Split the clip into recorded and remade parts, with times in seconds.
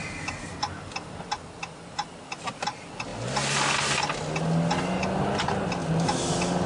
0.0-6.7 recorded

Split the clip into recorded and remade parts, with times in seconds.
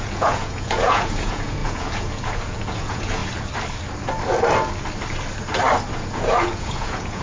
0.0-3.2 remade; 3.2-5.9 recorded; 5.9-7.2 remade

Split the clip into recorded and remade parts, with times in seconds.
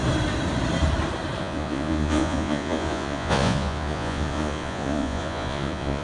0.0-1.4 recorded; 1.4-6.0 remade